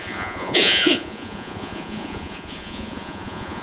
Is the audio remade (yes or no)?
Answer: yes